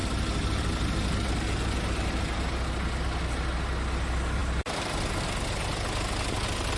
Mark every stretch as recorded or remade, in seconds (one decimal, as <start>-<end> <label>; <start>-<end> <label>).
0.0-6.8 recorded